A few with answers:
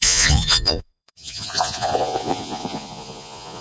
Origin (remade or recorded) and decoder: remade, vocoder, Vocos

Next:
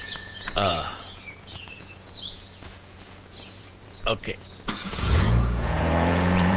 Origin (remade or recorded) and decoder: remade, vocoder, Vocos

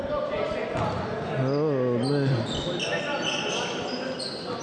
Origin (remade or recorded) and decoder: recorded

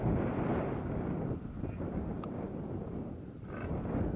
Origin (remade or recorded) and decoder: recorded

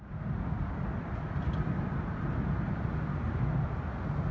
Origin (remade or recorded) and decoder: recorded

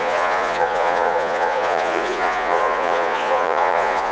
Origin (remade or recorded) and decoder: remade, vocoder, Vocos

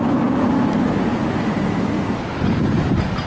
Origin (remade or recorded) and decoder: recorded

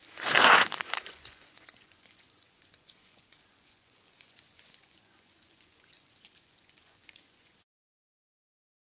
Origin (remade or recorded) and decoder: remade, vocoder, Vocos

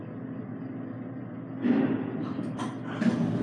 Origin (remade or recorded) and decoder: recorded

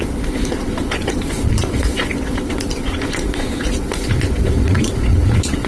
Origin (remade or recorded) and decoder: remade, vocoder, Vocos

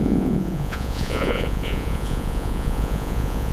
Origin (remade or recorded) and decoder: remade, vocoder, Vocos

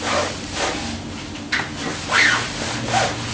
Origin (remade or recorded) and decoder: recorded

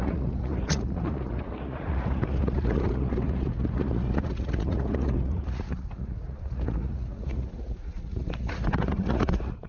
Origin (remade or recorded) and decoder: remade, vocoder, Vocos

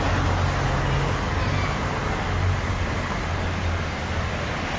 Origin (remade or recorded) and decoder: recorded